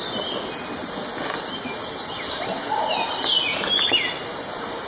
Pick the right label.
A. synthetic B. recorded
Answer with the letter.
B